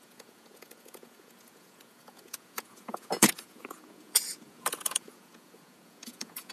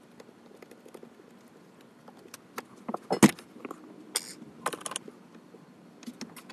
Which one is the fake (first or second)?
first